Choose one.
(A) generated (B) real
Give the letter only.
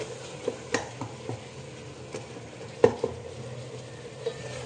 B